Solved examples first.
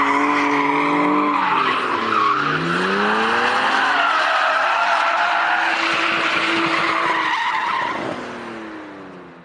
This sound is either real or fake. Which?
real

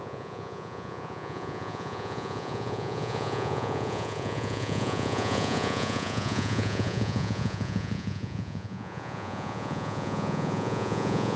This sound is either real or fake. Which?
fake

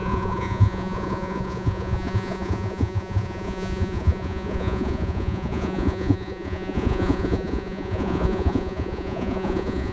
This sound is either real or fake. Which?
fake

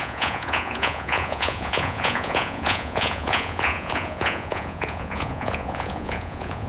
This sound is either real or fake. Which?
fake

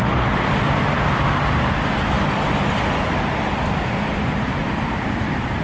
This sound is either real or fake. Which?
real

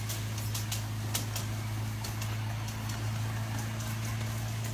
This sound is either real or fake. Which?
real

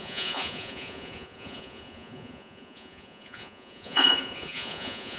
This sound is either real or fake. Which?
fake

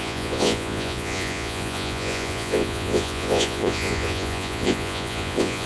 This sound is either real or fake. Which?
fake